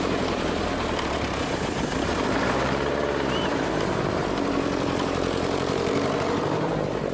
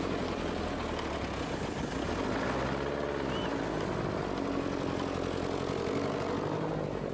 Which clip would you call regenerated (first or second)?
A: first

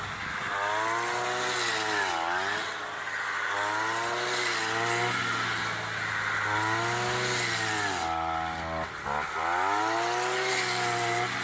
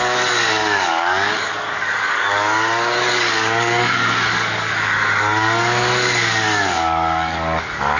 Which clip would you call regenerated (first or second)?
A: second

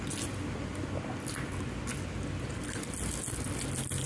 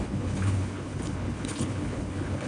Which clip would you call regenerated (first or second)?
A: second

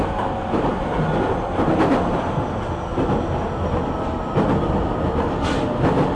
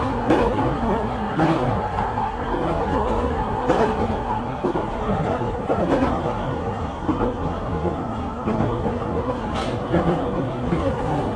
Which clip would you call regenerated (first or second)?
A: second